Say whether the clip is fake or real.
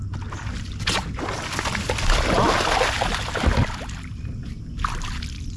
real